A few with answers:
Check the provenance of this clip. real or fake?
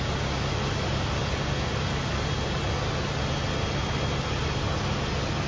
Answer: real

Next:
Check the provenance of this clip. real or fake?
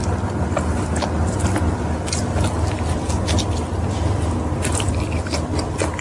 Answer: real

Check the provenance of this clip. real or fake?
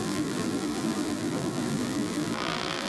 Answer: fake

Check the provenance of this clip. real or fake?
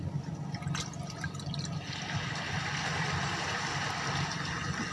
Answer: real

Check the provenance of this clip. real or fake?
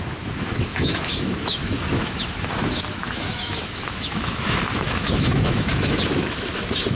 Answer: fake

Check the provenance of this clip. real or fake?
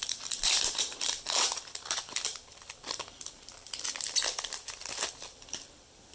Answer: fake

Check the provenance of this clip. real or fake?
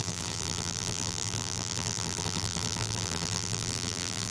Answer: fake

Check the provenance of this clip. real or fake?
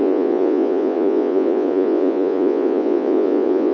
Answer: fake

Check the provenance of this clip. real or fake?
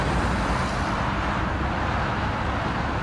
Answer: real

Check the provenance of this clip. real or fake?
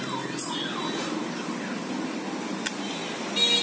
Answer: real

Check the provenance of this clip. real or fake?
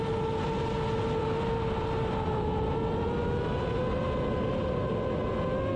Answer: real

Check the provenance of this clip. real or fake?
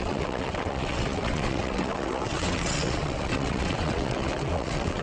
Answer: fake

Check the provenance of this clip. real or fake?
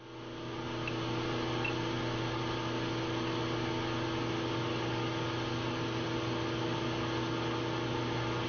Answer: real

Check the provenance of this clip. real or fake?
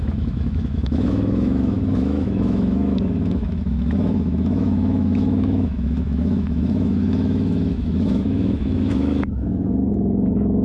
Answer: fake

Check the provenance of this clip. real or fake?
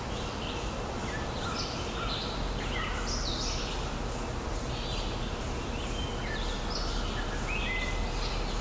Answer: real